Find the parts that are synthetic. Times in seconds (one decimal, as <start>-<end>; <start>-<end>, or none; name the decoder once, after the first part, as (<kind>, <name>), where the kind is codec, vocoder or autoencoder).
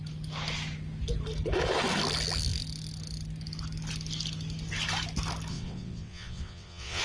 5.5-7.0 (vocoder, WaveNeXt)